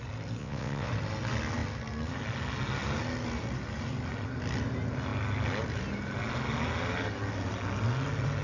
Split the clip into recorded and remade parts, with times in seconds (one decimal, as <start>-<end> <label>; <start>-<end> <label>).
0.0-0.4 recorded; 0.4-0.9 remade; 0.9-8.4 recorded